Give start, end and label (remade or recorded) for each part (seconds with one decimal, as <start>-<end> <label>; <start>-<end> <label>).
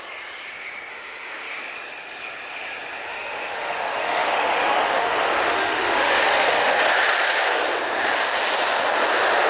0.0-0.9 recorded; 0.9-1.5 remade; 1.5-3.1 recorded; 3.1-6.9 remade; 6.9-9.5 recorded